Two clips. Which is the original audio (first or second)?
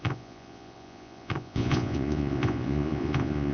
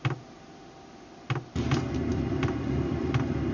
second